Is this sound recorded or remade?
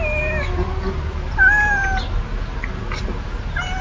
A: recorded